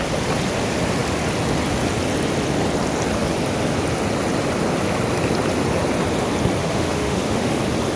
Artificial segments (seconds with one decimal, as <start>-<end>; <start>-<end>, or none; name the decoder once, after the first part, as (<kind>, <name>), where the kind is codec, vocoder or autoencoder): 6.6-7.6 (autoencoder, DAC-VAE)